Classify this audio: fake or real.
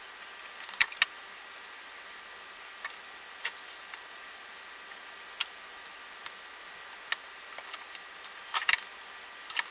real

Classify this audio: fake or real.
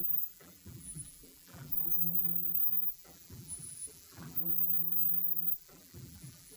fake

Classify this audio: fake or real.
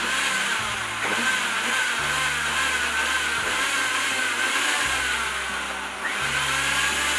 real